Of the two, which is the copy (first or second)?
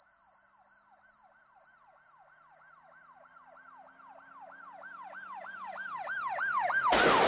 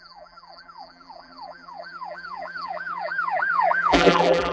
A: second